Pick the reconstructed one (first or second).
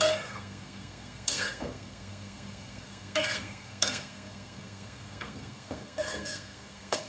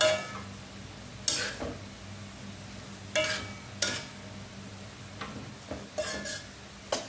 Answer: first